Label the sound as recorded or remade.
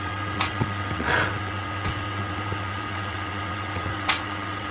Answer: remade